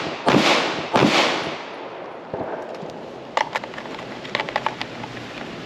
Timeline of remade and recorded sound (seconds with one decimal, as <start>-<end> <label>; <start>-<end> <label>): 0.0-5.7 recorded